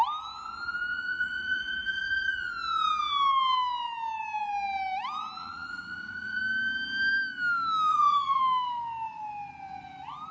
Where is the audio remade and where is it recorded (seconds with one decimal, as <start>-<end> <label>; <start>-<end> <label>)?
0.0-0.9 recorded; 0.9-2.5 remade; 2.5-5.4 recorded; 5.4-6.4 remade; 6.4-7.9 recorded; 7.9-8.4 remade; 8.4-10.3 recorded